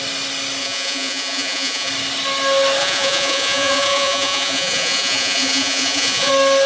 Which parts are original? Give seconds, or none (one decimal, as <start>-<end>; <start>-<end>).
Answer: 0.0-0.6; 1.9-2.8; 6.3-6.7